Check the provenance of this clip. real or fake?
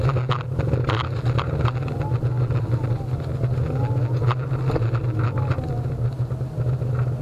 real